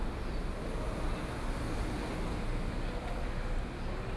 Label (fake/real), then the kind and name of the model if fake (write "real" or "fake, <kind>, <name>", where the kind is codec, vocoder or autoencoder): real